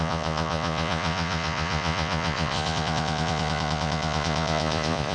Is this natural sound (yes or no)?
no